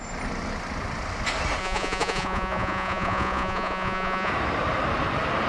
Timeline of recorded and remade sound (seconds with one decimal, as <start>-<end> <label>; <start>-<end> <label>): 0.0-1.6 recorded; 1.6-4.3 remade; 4.3-5.5 recorded